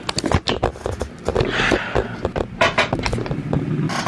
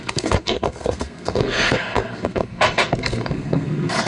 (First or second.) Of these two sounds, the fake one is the second